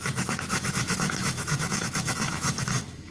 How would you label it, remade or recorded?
remade